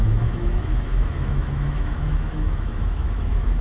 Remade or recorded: remade